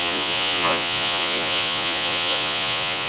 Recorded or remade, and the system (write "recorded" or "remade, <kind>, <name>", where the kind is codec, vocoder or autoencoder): remade, vocoder, Vocos